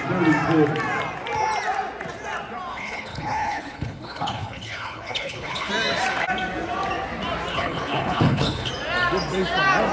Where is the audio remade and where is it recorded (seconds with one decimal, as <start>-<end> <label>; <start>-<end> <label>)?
0.0-2.7 recorded; 2.7-5.7 remade; 5.7-7.5 recorded; 7.5-8.7 remade; 8.7-9.9 recorded